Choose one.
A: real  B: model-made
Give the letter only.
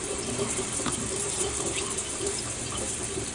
B